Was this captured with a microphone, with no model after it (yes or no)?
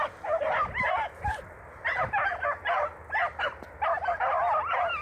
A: yes